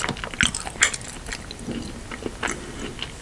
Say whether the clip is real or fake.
real